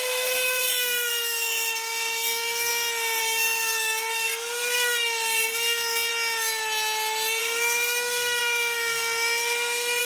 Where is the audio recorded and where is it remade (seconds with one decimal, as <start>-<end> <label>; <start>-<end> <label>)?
0.0-2.7 remade; 2.7-3.2 recorded; 3.2-6.1 remade; 6.1-7.4 recorded; 7.4-10.0 remade